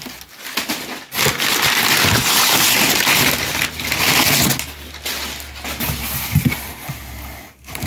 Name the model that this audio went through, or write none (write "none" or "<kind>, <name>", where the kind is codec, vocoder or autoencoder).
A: none